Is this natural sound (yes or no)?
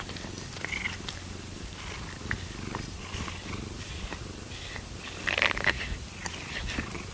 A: no